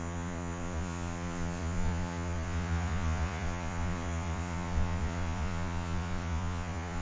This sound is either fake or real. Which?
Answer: fake